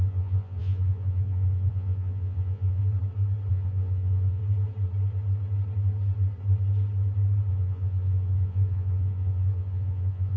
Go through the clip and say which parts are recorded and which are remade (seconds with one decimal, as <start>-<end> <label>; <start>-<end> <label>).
0.0-2.8 remade; 2.8-3.5 recorded; 3.5-4.4 remade; 4.4-7.5 recorded; 7.5-10.4 remade

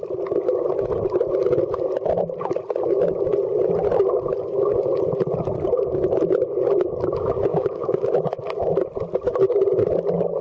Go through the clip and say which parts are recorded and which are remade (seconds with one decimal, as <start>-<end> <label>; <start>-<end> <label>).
0.0-7.5 recorded; 7.5-8.1 remade; 8.1-10.4 recorded

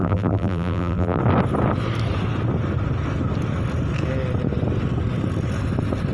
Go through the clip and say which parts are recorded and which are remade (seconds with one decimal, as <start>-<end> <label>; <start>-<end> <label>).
0.0-1.2 remade; 1.2-6.1 recorded

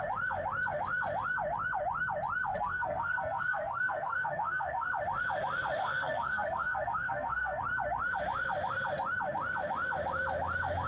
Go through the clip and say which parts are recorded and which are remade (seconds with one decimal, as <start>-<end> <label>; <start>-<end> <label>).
0.0-2.5 recorded; 2.5-4.9 remade; 4.9-5.8 recorded; 5.8-7.6 remade; 7.6-10.9 recorded

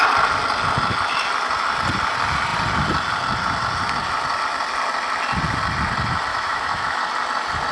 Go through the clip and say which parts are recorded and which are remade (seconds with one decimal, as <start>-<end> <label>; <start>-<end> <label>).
0.0-6.3 recorded; 6.3-7.0 remade; 7.0-7.7 recorded